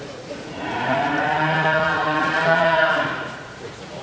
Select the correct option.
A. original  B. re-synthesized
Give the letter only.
B